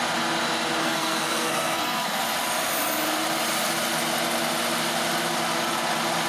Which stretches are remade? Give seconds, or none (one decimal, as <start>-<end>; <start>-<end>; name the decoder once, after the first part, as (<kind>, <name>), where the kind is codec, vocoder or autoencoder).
0.8-2.2 (codec, SNAC)